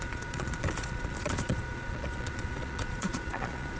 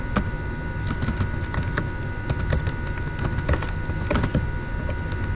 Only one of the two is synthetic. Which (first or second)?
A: first